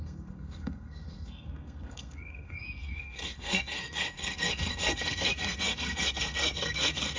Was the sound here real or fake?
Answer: fake